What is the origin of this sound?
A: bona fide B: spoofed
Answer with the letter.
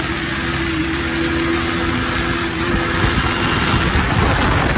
A